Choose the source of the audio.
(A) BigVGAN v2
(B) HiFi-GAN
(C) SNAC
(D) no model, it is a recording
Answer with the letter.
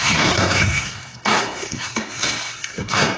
C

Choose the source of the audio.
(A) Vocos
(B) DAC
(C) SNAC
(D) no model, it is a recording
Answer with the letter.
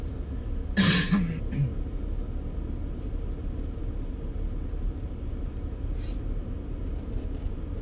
D